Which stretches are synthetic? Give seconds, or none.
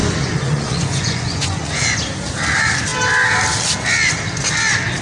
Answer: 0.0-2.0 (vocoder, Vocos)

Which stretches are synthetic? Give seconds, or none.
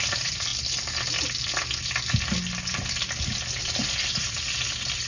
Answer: 0.0-0.5 (vocoder, BigVGAN v2); 3.6-5.1